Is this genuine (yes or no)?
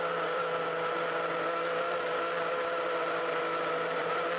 yes